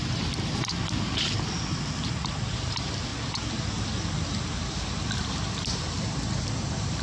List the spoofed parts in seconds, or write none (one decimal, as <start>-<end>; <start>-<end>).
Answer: 0.0-3.1; 5.8-7.0